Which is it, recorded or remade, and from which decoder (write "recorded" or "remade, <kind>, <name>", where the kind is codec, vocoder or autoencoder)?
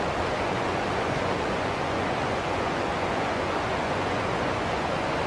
remade, vocoder, Vocos